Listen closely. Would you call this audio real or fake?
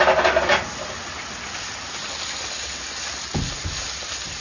real